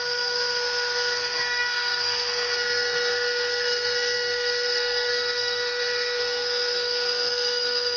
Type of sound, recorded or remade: remade